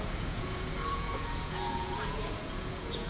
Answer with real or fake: fake